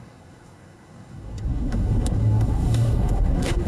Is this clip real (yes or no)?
no